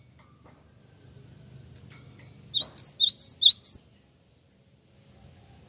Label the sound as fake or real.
real